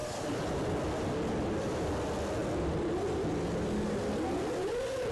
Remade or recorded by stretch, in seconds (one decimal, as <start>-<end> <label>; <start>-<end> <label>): 0.0-5.1 recorded